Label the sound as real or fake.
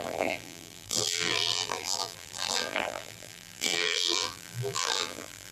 fake